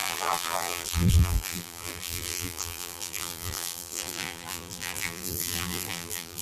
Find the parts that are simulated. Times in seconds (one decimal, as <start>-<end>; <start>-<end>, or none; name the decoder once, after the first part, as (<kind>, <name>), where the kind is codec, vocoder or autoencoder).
0.0-6.4 (vocoder, BigVGAN v2)